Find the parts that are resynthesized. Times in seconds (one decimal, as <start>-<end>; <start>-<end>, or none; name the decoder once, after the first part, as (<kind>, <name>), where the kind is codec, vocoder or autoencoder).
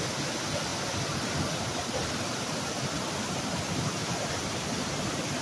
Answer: none